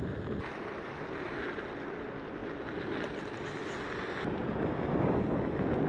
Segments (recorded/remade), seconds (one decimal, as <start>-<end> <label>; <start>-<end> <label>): 0.0-5.9 recorded